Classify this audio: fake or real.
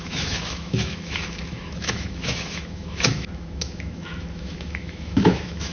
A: fake